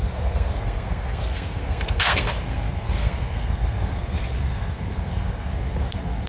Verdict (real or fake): fake